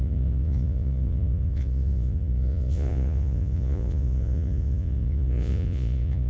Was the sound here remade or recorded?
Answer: remade